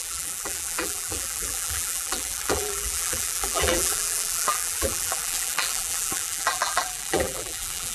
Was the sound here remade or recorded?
remade